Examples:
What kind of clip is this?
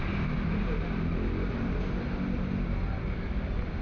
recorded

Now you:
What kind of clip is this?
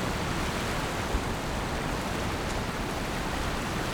recorded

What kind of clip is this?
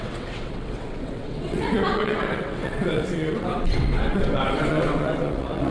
remade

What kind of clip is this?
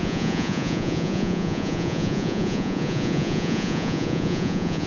remade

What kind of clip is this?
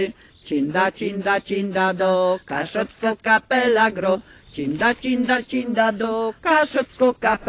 recorded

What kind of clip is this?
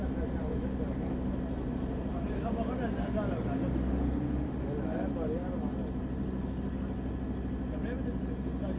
recorded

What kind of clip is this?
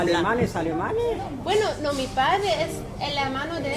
recorded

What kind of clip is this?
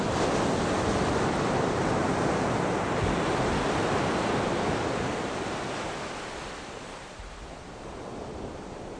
recorded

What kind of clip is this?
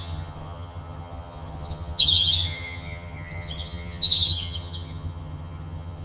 remade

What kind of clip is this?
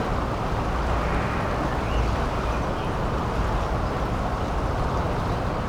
recorded